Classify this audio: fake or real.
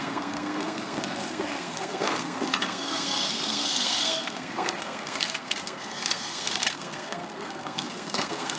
fake